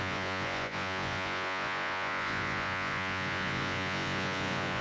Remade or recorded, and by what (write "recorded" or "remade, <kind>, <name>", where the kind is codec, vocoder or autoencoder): remade, vocoder, Vocos